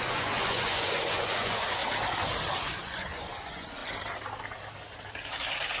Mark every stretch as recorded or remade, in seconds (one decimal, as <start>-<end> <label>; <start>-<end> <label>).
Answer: 0.0-1.8 remade; 1.8-2.5 recorded; 2.5-3.8 remade; 3.8-5.8 recorded